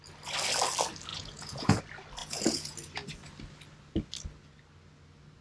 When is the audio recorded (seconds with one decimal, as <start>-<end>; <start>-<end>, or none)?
0.0-1.1; 1.8-2.2; 2.9-5.4